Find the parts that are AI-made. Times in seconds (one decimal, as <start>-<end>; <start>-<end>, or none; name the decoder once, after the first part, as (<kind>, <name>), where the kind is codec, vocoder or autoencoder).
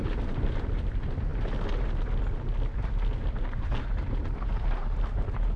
0.0-0.7 (vocoder, BigVGAN v2); 3.2-5.6